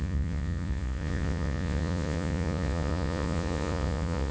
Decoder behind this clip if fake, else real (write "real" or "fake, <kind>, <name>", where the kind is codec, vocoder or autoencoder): fake, vocoder, Vocos